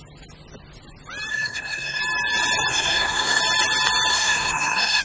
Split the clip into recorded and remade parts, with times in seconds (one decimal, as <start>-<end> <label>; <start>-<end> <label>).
0.0-1.3 recorded; 1.3-2.0 remade; 2.0-2.7 recorded; 2.7-3.4 remade; 3.4-4.1 recorded; 4.1-5.0 remade